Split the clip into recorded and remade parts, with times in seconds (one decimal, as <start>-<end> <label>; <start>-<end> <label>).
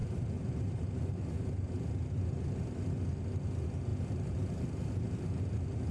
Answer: 0.0-1.3 remade; 1.3-5.9 recorded